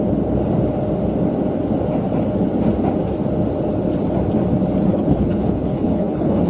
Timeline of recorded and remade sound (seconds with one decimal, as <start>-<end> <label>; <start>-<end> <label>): 0.0-4.9 recorded; 4.9-6.5 remade